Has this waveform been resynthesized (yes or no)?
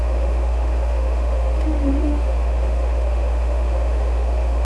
yes